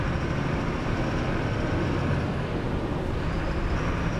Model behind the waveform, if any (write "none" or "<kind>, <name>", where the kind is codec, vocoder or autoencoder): none